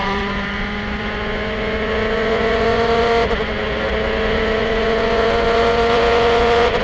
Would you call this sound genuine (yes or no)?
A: no